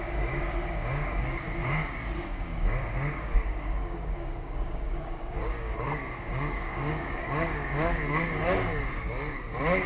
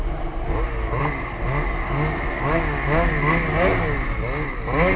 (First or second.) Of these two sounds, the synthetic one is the first